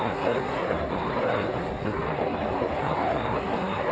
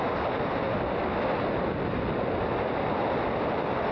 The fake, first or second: first